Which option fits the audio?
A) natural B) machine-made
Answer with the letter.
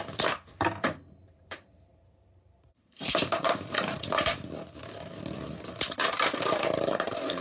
B